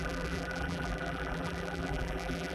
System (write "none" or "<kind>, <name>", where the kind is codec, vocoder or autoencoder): vocoder, BigVGAN v2